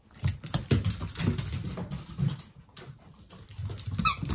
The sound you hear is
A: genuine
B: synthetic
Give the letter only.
A